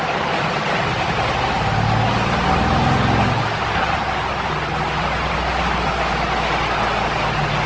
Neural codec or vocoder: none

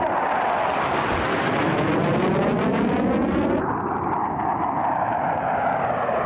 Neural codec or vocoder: none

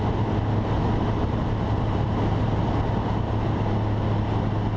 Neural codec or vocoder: none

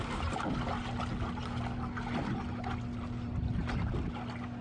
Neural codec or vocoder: none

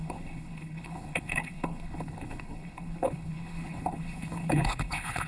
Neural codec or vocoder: codec, HILCodec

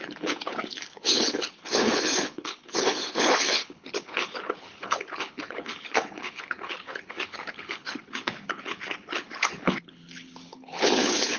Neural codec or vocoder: codec, HILCodec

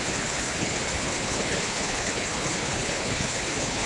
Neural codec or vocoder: codec, HILCodec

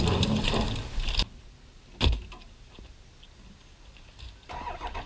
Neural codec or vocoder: none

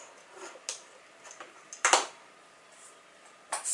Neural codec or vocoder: none